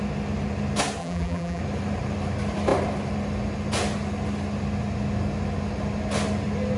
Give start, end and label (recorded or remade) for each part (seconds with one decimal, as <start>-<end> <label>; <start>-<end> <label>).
0.0-1.0 recorded; 1.0-1.6 remade; 1.6-6.8 recorded